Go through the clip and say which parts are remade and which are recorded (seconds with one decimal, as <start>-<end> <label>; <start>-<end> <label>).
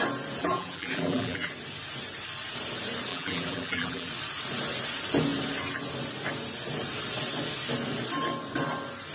0.0-0.4 recorded; 0.4-1.5 remade; 1.5-3.1 recorded; 3.1-4.1 remade; 4.1-9.1 recorded